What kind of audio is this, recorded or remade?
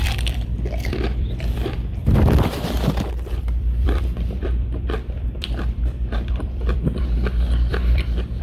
remade